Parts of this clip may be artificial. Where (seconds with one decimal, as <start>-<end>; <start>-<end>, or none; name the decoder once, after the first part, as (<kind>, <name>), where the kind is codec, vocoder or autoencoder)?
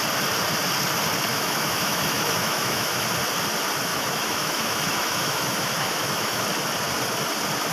1.3-3.0 (autoencoder, DAC-VAE); 3.9-6.4